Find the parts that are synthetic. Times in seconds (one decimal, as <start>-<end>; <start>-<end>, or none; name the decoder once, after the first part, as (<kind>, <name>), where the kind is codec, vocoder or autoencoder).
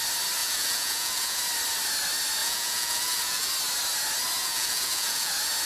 0.4-1.4 (vocoder, Vocos); 2.4-3.5; 4.4-5.3